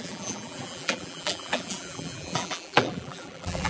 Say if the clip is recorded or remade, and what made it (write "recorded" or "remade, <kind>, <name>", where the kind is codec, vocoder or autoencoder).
remade, vocoder, BigVGAN v2